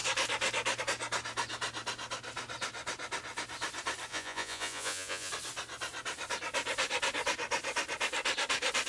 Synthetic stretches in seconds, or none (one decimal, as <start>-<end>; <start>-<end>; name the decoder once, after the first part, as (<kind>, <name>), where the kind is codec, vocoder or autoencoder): 4.1-5.3 (vocoder, Vocos)